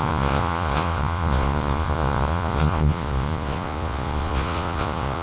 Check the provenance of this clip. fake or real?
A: fake